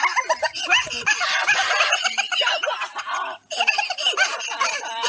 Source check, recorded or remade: recorded